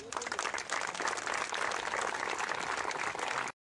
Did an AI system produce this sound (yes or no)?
no